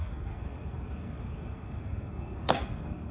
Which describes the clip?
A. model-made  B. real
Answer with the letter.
A